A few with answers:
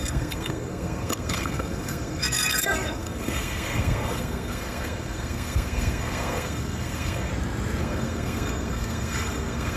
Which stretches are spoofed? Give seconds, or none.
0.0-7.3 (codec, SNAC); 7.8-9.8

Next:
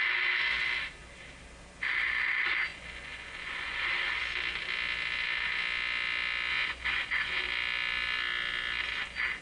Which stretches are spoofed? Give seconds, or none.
2.7-3.9 (vocoder, Vocos); 6.5-7.4

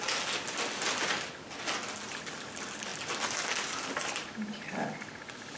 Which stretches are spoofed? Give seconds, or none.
none

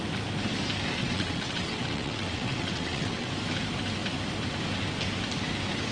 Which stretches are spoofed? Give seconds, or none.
1.0-3.3 (vocoder, WaveNeXt)

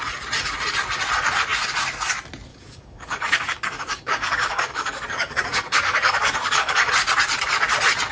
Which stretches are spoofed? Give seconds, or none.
2.5-6.9 (codec, DAC)

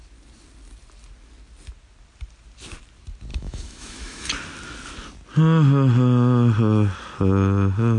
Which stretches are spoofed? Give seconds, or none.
3.3-4.3 (autoencoder, DAC-VAE)

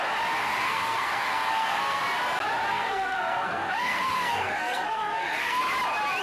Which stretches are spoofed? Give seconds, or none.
0.4-2.0 (codec, SNAC); 2.7-5.6

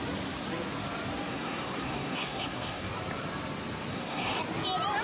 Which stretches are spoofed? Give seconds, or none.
1.3-2.9 (codec, SNAC); 3.9-4.4